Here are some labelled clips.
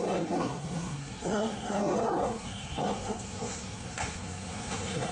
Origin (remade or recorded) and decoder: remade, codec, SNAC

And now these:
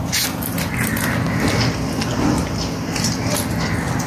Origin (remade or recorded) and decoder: recorded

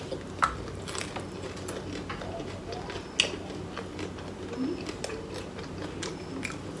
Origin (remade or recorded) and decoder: recorded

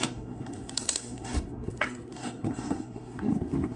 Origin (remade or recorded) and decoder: remade, codec, SNAC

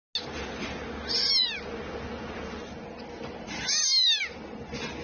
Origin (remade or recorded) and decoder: recorded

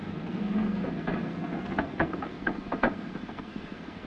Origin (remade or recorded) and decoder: remade, codec, SNAC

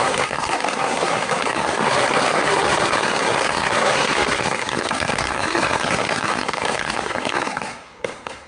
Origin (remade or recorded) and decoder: remade, codec, SNAC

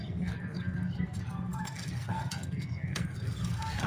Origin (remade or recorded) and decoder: remade, codec, SNAC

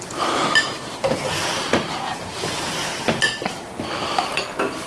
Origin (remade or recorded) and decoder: recorded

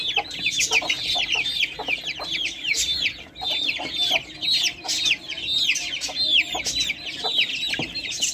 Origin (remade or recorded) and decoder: recorded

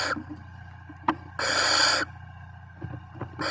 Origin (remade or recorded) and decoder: recorded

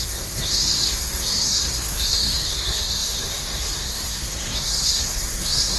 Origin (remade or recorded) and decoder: remade, codec, SNAC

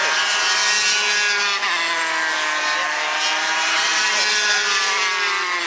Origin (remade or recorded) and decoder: recorded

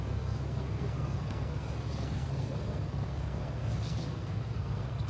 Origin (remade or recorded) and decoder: remade, codec, SNAC